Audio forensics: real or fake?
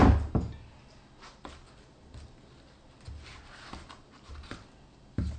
real